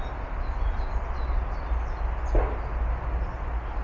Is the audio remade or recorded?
recorded